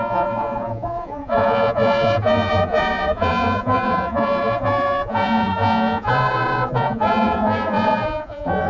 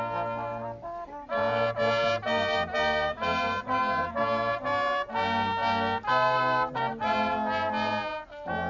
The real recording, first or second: second